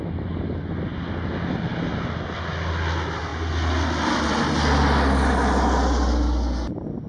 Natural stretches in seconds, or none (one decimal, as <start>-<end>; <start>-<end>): 0.0-7.1